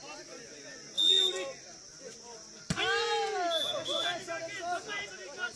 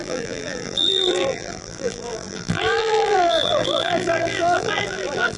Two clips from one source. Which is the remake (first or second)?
second